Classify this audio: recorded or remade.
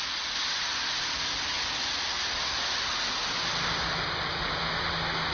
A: recorded